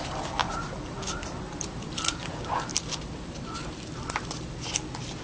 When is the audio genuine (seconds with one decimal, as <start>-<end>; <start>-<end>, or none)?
0.0-0.4; 2.3-2.7; 3.4-5.2